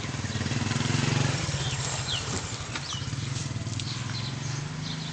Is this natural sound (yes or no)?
yes